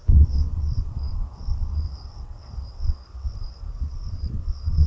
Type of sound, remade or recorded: remade